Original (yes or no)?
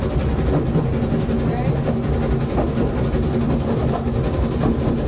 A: yes